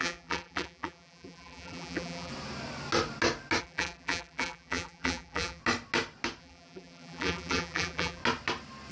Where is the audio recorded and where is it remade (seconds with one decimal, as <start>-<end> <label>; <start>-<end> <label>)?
0.0-2.3 remade; 2.3-3.6 recorded; 3.6-5.6 remade; 5.6-6.4 recorded; 6.4-8.2 remade; 8.2-8.9 recorded